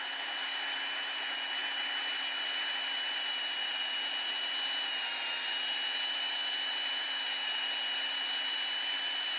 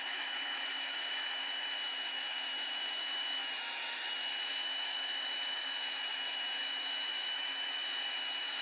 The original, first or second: first